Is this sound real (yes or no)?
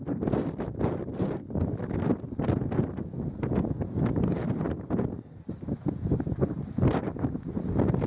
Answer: yes